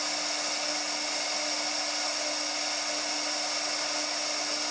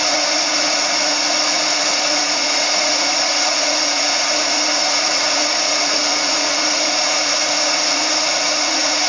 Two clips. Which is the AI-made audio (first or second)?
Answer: second